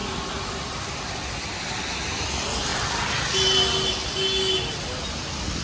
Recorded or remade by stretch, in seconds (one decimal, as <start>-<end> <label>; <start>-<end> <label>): 0.0-5.6 recorded